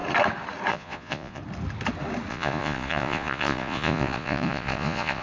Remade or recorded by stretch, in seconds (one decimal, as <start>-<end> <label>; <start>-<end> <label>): 0.0-0.7 recorded; 0.7-1.4 remade; 1.4-2.3 recorded; 2.3-5.2 remade